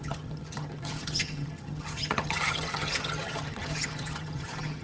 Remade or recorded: remade